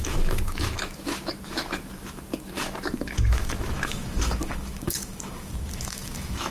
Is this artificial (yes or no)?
yes